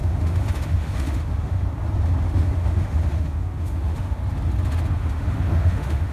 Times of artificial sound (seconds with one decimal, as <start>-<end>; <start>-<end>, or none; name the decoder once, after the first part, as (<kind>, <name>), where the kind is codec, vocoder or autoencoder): 0.0-1.7 (autoencoder, DAC-VAE); 2.3-4.2; 4.9-6.1